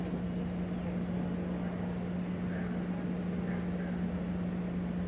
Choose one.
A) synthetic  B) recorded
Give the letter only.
B